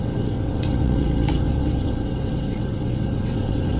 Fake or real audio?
fake